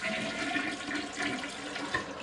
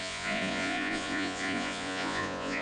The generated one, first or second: second